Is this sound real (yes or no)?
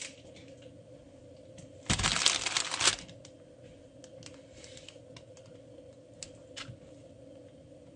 yes